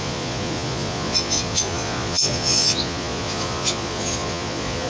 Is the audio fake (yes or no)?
yes